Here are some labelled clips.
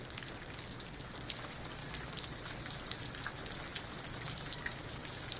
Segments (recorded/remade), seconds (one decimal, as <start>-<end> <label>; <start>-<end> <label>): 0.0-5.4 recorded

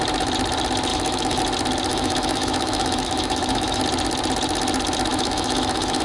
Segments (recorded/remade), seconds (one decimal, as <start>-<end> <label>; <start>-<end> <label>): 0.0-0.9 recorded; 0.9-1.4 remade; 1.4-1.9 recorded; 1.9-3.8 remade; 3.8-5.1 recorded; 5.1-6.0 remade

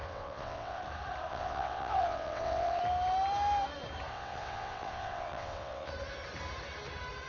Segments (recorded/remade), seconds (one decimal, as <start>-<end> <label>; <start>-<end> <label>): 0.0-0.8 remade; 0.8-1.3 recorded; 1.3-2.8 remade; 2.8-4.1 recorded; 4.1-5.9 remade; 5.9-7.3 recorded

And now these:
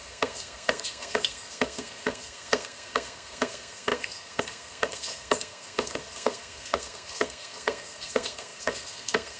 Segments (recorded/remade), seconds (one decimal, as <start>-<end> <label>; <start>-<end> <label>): 0.0-9.4 remade

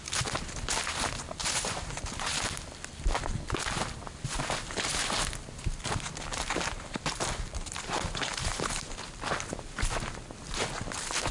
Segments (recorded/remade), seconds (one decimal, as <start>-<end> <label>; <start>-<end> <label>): 0.0-1.4 recorded; 1.4-2.3 remade; 2.3-6.3 recorded; 6.3-8.9 remade; 8.9-11.3 recorded